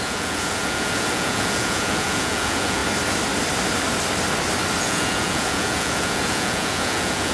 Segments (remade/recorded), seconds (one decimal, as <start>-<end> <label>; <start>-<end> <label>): 0.0-2.8 remade; 2.8-4.8 recorded; 4.8-7.3 remade